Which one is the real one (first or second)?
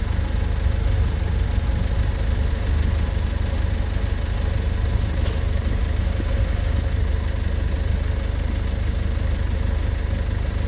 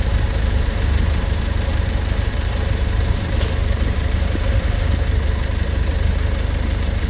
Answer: first